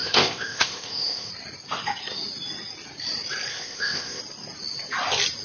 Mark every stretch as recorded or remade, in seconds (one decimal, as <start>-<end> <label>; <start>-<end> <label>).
0.0-1.3 remade; 1.3-3.5 recorded; 3.5-4.2 remade; 4.2-5.4 recorded